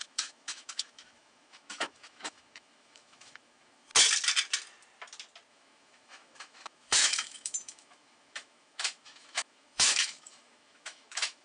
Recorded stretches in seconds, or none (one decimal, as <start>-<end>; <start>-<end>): 3.9-5.5